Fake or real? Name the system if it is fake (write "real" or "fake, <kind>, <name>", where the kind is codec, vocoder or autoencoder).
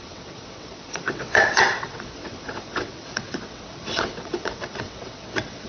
fake, vocoder, WaveNeXt